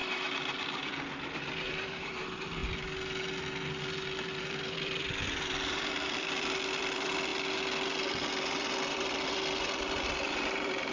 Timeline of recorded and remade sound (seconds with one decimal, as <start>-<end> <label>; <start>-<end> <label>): 0.0-1.7 recorded; 1.7-2.6 remade; 2.6-4.4 recorded; 4.4-7.3 remade; 7.3-8.1 recorded; 8.1-10.9 remade